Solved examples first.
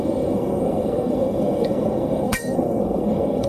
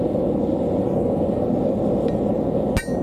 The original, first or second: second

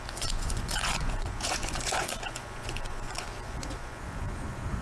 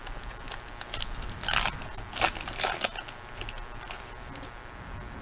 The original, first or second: second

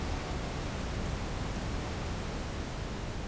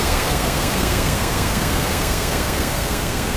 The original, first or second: first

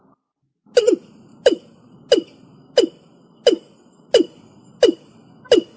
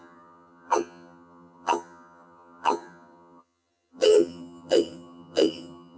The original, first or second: first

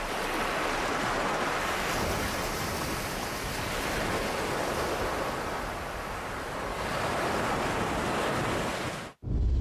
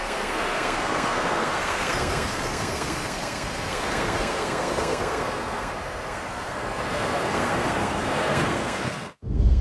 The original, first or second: first